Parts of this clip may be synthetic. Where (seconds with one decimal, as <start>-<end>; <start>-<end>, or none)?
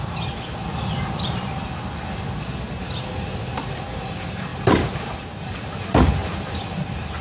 none